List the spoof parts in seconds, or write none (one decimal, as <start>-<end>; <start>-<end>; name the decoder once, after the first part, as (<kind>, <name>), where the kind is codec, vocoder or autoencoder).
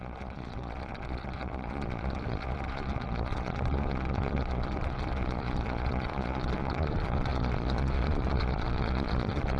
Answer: 0.0-9.6 (vocoder, Vocos)